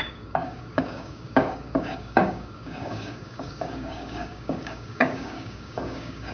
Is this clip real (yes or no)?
no